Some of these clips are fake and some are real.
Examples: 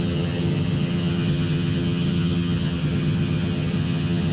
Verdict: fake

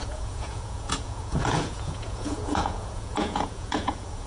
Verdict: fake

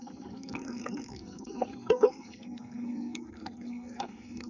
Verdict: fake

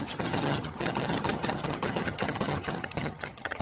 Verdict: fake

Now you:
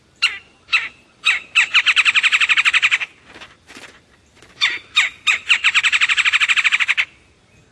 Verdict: fake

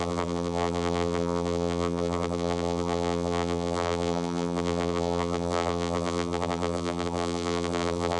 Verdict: fake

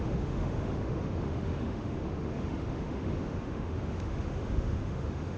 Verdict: fake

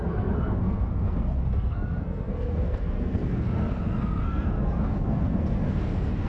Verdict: fake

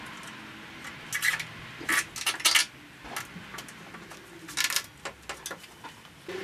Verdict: real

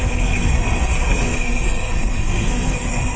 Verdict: fake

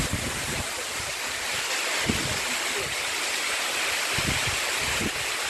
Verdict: real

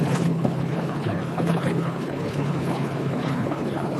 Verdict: fake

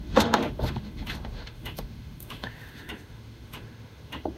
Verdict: fake